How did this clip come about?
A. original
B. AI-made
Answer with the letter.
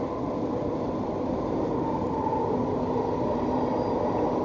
A